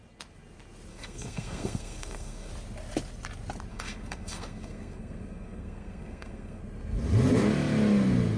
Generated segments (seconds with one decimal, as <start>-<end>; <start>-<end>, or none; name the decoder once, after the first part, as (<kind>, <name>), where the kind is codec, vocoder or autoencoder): 0.9-2.5 (codec, SNAC); 3.7-6.6